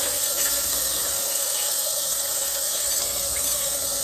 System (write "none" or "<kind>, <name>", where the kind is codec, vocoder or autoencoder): codec, SNAC